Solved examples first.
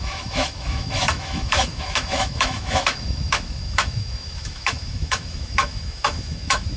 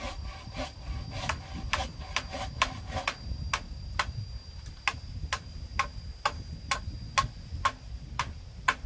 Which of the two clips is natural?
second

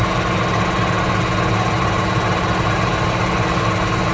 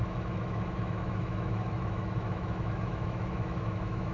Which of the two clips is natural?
first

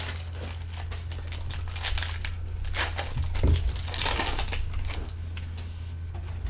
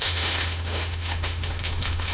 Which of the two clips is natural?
first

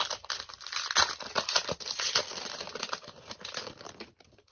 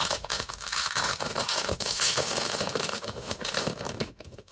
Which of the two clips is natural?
first